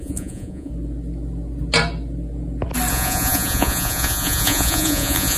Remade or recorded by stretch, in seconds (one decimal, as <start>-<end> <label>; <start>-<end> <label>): 0.0-0.7 remade; 0.7-2.9 recorded; 2.9-5.4 remade